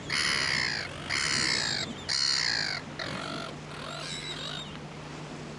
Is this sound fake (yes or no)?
no